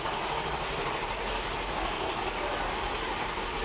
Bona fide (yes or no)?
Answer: yes